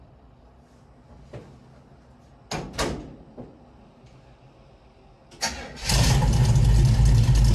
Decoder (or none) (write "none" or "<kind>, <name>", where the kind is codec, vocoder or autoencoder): none